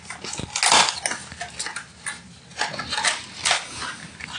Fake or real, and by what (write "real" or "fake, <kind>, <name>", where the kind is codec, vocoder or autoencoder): real